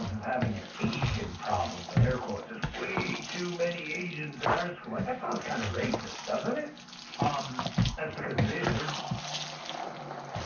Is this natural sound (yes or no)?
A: yes